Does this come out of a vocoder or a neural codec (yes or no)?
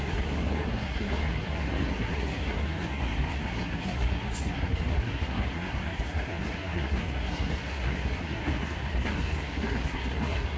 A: yes